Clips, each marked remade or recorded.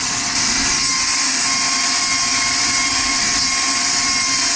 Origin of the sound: recorded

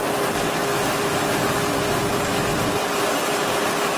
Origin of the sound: recorded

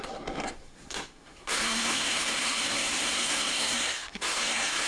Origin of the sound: remade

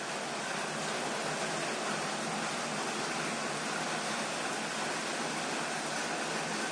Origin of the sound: recorded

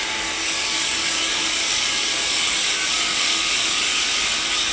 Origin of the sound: remade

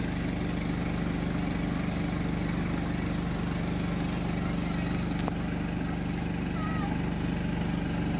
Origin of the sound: recorded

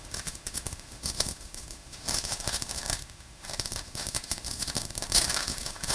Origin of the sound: remade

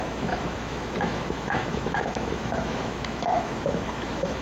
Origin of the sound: remade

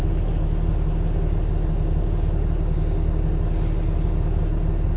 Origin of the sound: recorded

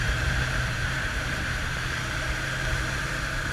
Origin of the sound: remade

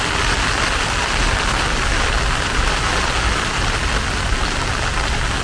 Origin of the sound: recorded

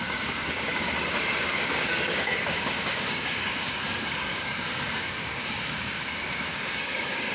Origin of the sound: remade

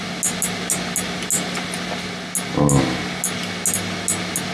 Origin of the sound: recorded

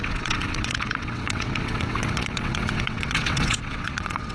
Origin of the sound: remade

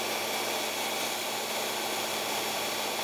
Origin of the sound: recorded